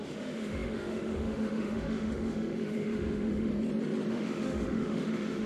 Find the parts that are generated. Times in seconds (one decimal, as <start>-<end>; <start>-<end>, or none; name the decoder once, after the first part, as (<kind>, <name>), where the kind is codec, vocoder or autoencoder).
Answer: 0.0-3.5 (autoencoder, DAC-VAE); 4.1-5.5